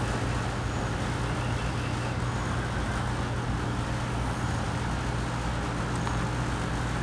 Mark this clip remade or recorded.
recorded